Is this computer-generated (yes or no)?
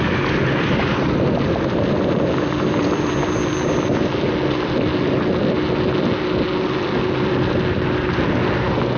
no